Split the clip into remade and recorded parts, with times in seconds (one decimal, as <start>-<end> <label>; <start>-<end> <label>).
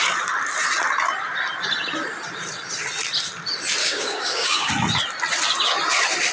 0.0-3.8 recorded; 3.8-4.7 remade; 4.7-6.3 recorded